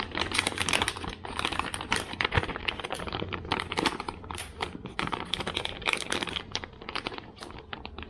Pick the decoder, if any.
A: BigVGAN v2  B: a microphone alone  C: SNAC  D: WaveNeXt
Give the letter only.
A